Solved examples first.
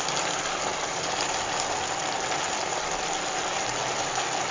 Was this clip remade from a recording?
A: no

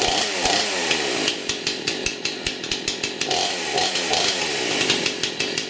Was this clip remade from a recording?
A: no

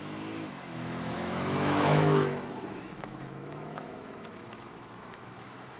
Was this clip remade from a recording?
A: yes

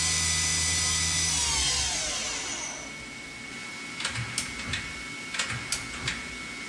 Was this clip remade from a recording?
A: no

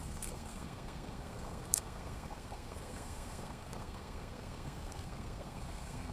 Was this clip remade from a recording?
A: yes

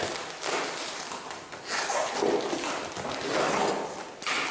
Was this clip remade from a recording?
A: no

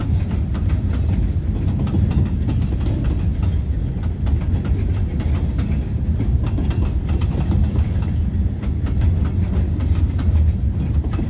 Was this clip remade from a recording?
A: no